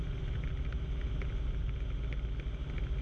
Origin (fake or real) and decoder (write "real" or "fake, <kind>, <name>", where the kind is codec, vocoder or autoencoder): real